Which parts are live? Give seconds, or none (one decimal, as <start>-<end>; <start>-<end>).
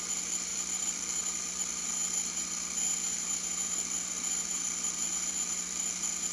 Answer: 0.0-0.5; 1.2-6.3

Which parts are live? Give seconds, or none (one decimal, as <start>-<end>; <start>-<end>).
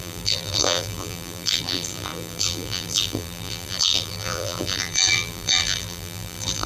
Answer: none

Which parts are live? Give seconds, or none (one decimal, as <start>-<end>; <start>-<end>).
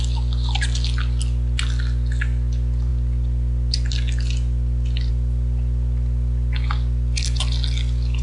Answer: 0.0-8.2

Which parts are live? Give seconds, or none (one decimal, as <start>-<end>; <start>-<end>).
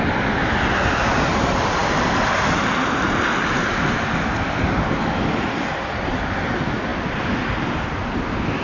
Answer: 0.0-8.6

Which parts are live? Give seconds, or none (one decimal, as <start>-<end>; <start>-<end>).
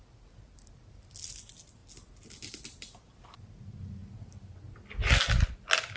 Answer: 0.0-6.0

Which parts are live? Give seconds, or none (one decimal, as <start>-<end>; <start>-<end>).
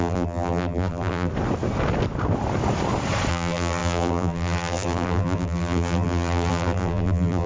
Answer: 1.3-3.3